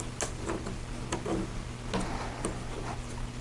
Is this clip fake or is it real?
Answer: real